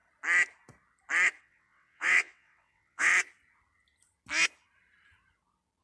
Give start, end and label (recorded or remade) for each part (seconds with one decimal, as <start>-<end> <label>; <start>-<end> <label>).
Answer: 0.0-1.4 recorded; 1.4-3.1 remade; 3.1-5.8 recorded